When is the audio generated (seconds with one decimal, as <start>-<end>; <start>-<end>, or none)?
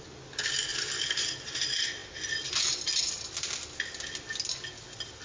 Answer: 0.7-1.3